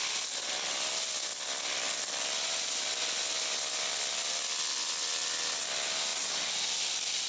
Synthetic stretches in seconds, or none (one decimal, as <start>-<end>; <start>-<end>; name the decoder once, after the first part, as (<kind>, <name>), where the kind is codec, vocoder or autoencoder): none